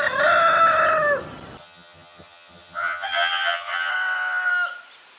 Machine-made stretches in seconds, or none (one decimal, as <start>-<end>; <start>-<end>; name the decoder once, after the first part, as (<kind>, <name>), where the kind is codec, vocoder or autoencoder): 1.6-3.9 (vocoder, HiFi-GAN)